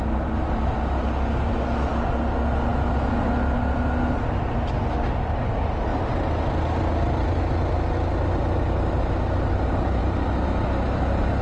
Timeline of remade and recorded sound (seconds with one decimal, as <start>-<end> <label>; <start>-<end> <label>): 0.0-11.4 recorded